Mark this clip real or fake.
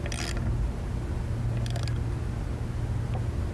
real